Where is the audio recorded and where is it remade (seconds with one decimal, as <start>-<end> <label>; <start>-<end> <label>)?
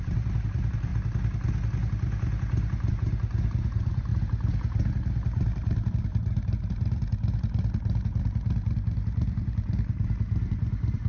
0.0-0.9 remade; 0.9-2.9 recorded; 2.9-11.1 remade